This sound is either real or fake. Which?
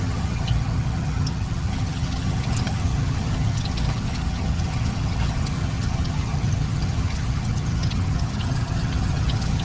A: fake